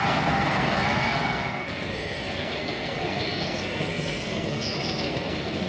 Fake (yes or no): yes